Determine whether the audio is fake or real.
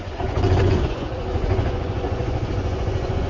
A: fake